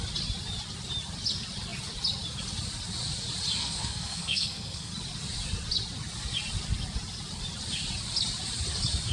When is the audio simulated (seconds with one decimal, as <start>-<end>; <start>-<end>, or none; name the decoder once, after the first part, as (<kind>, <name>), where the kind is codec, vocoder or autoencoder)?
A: 3.6-4.9 (codec, SNAC)